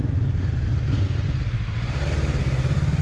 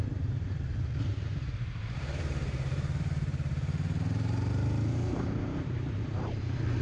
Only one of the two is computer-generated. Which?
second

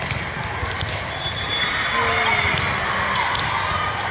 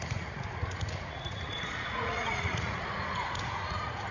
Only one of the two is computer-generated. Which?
second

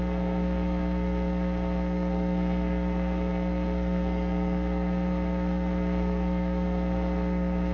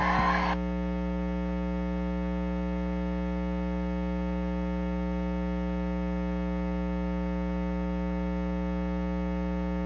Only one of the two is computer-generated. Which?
first